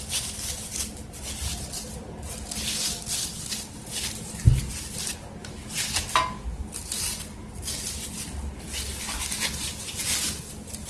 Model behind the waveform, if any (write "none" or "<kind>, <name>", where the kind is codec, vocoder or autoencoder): none